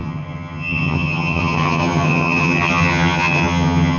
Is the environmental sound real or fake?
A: fake